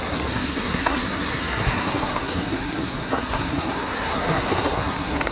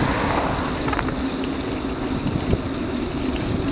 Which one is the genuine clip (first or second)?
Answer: second